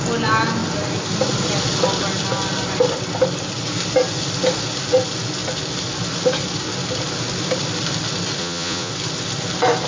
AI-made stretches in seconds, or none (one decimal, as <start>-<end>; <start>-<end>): 8.4-8.9